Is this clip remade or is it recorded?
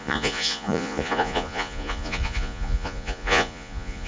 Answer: remade